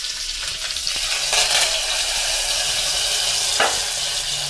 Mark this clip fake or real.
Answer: real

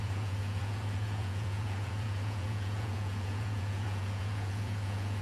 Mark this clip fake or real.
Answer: fake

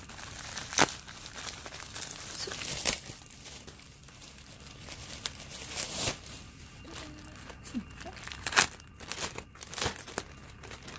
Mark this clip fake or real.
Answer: real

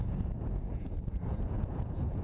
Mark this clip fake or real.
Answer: fake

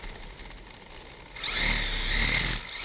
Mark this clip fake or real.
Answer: real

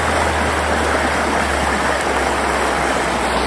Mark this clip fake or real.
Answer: real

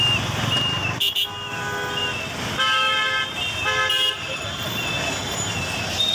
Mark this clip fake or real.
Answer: real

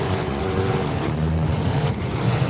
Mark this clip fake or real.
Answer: fake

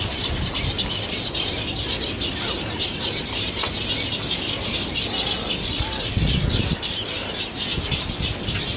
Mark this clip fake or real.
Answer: real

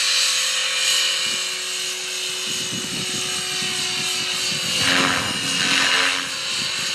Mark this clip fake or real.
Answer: real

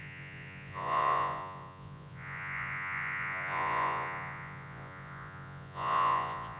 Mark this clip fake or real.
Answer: fake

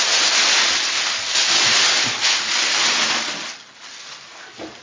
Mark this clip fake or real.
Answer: real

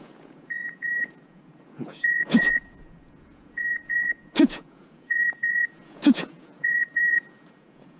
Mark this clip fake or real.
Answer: fake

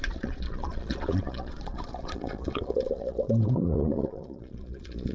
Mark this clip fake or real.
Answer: fake